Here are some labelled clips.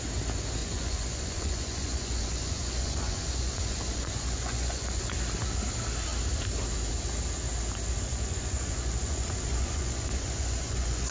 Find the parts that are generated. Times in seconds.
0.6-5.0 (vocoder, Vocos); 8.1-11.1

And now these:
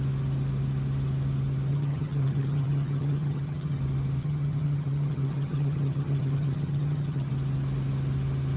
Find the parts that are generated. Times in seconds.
1.7-3.8 (vocoder, HiFi-GAN); 4.2-7.3

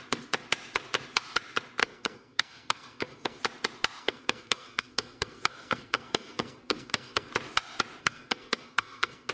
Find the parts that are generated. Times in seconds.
1.8-3.4 (codec, SNAC); 4.0-7.3; 8.0-9.3

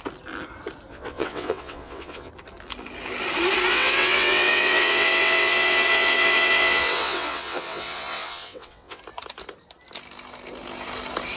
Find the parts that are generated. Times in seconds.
0.9-2.3 (vocoder, WaveNeXt); 3.7-9.0

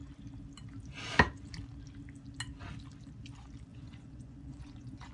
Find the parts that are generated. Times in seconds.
3.7-5.1 (vocoder, Vocos)

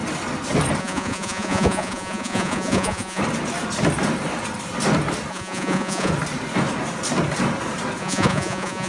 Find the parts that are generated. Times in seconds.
0.8-3.2 (vocoder, Vocos); 5.3-6.1; 8.0-8.9

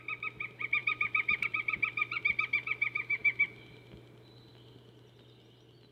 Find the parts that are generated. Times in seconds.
0.8-2.2 (vocoder, BigVGAN v2)